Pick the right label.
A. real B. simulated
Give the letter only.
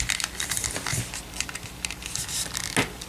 A